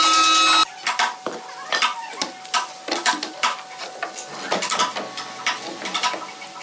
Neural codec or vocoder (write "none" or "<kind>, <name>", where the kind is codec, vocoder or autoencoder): none